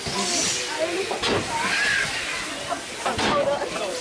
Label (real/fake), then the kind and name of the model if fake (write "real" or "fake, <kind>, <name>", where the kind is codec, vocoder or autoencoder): real